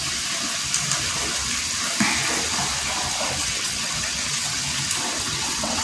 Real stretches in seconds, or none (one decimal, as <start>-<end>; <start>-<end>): 0.0-3.4; 4.6-5.2